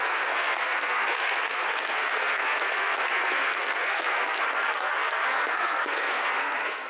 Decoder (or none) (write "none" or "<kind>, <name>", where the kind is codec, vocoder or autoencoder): codec, SNAC